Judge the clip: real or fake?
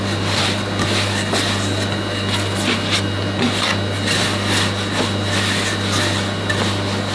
real